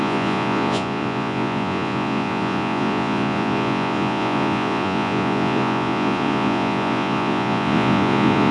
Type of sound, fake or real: fake